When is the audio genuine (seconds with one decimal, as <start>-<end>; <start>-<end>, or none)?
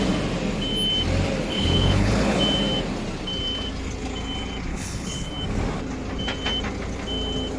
0.0-1.5; 2.4-4.7; 5.3-7.6